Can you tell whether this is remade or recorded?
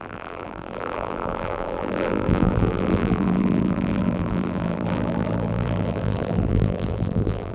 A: remade